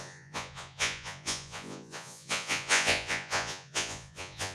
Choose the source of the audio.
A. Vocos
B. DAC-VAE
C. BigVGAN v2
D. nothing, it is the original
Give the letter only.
A